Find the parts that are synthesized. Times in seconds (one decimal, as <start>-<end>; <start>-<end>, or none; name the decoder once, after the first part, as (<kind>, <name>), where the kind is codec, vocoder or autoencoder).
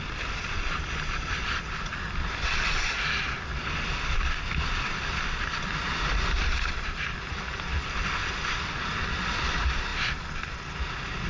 0.0-9.9 (vocoder, BigVGAN v2); 10.5-11.3